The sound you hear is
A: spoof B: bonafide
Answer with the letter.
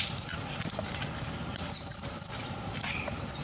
A